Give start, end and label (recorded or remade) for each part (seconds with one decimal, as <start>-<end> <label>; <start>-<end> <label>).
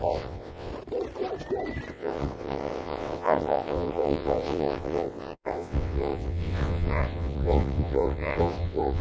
0.0-0.7 remade; 0.7-1.9 recorded; 1.9-9.0 remade